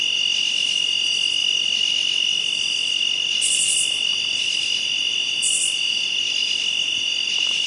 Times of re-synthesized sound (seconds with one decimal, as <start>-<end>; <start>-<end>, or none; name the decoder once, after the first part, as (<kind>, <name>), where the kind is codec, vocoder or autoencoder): 1.4-5.9 (vocoder, BigVGAN v2)